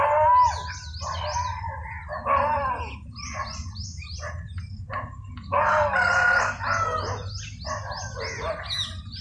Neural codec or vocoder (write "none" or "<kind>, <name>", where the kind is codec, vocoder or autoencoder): none